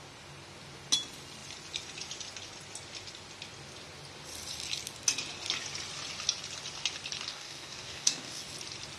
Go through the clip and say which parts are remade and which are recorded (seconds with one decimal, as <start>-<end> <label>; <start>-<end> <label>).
0.0-7.3 recorded; 7.3-8.4 remade; 8.4-9.0 recorded